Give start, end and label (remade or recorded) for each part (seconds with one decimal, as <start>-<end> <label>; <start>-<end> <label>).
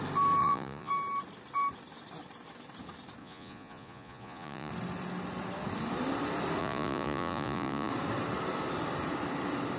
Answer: 0.0-0.4 recorded; 0.4-0.9 remade; 0.9-3.2 recorded; 3.2-4.7 remade; 4.7-6.6 recorded; 6.6-7.9 remade; 7.9-9.8 recorded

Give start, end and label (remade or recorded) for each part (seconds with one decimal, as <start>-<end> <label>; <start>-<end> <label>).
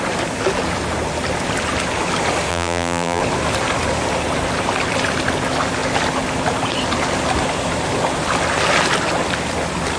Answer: 0.0-2.5 recorded; 2.5-3.2 remade; 3.2-10.0 recorded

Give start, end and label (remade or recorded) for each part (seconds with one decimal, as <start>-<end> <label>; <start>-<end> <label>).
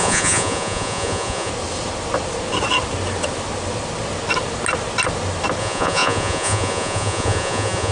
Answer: 0.0-1.5 remade; 1.5-5.6 recorded; 5.6-7.9 remade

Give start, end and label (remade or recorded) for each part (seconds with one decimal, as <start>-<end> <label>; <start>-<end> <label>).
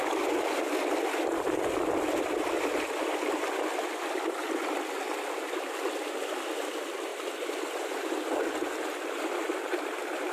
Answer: 0.0-7.1 recorded; 7.1-8.0 remade; 8.0-10.3 recorded